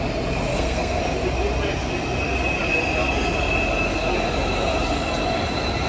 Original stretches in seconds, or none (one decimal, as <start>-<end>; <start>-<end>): 0.0-0.5; 1.0-5.9